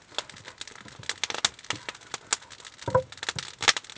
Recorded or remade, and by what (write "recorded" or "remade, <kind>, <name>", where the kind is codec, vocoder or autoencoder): recorded